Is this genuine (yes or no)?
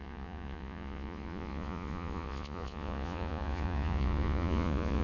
no